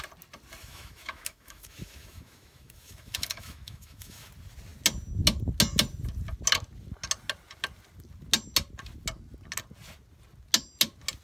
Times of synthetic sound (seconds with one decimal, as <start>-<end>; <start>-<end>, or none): 0.6-4.3